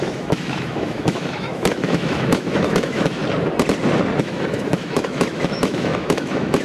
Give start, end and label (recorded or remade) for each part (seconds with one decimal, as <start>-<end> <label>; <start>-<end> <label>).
0.0-3.2 remade; 3.2-4.2 recorded; 4.2-6.6 remade